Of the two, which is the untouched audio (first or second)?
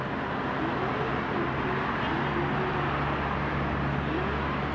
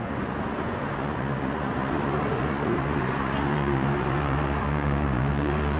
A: first